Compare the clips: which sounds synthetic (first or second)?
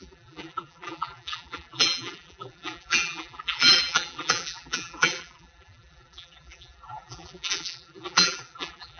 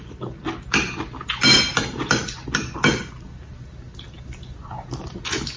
first